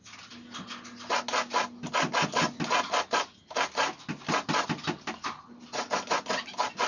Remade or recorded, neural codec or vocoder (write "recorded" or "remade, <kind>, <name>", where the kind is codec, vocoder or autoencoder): recorded